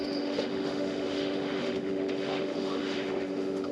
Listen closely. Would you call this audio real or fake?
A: fake